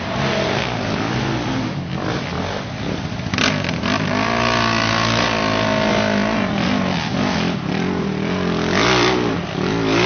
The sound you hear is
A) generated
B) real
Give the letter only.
B